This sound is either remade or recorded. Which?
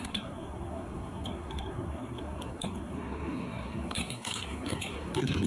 remade